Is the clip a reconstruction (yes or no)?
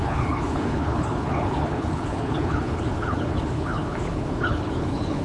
yes